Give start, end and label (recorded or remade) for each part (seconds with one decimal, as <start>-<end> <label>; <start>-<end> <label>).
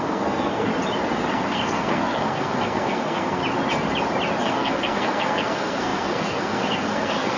0.0-0.7 remade; 0.7-1.3 recorded; 1.3-3.4 remade; 3.4-4.4 recorded; 4.4-7.4 remade